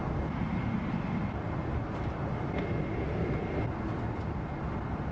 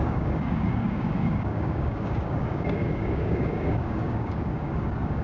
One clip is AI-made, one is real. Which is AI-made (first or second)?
second